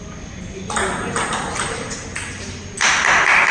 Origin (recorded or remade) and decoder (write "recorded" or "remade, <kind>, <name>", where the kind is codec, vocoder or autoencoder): recorded